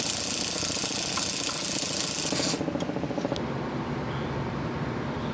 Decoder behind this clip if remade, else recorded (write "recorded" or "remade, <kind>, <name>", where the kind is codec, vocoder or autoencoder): recorded